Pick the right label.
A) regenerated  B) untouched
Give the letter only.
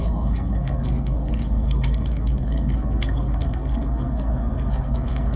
A